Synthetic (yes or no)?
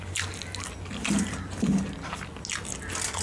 no